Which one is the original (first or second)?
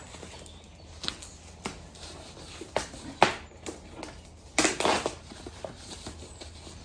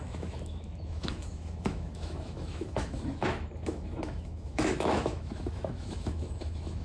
first